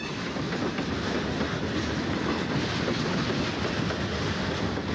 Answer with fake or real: real